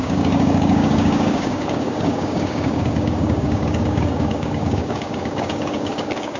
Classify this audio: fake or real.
fake